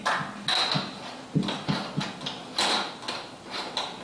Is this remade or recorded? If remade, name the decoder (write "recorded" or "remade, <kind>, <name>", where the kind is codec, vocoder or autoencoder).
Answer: recorded